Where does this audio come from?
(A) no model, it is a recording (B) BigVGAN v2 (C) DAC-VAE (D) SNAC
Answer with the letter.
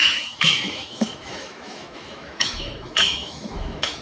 C